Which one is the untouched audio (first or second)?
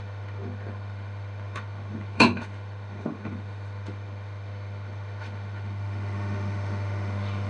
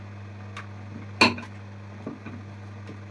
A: second